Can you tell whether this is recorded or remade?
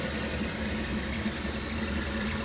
recorded